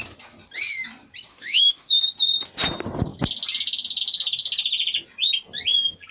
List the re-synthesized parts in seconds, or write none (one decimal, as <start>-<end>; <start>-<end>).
1.3-2.0